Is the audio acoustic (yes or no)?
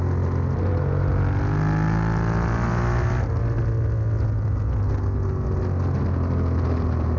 yes